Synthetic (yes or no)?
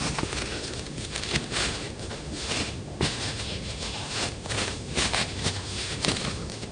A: yes